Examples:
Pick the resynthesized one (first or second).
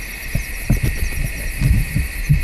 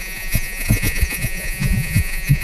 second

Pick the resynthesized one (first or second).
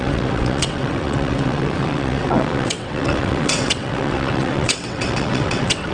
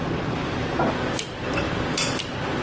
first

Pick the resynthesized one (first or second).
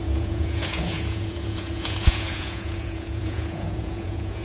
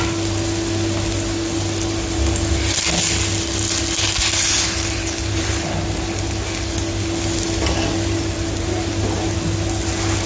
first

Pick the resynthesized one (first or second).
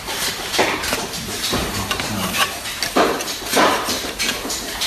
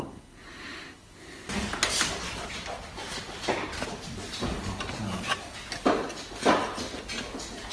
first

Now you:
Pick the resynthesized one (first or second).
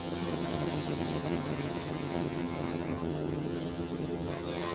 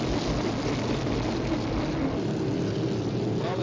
first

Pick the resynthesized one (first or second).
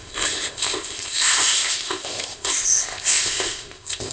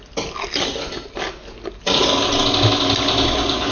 first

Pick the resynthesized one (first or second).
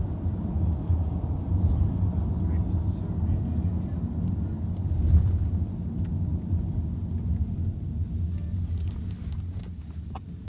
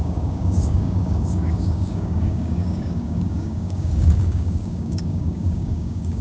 second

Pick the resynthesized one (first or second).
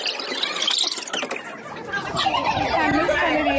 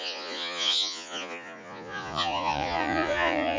second